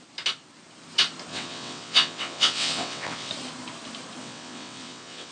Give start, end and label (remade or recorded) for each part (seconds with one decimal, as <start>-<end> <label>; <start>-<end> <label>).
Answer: 0.0-1.3 recorded; 1.3-3.3 remade; 3.3-4.2 recorded; 4.2-5.3 remade